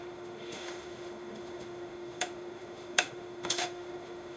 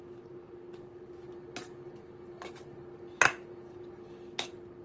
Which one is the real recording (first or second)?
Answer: second